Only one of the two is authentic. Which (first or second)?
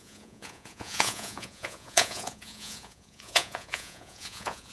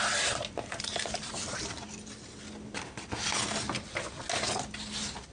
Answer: second